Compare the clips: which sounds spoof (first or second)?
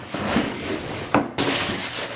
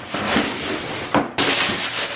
first